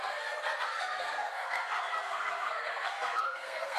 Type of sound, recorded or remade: remade